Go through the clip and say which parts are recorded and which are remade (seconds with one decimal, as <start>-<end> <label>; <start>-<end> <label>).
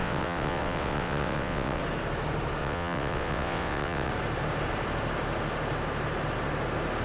0.0-1.8 remade; 1.8-2.6 recorded; 2.6-4.1 remade; 4.1-7.0 recorded